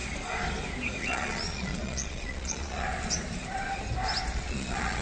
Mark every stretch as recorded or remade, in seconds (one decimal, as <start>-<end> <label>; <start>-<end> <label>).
0.0-1.0 recorded; 1.0-2.9 remade; 2.9-4.3 recorded; 4.3-5.0 remade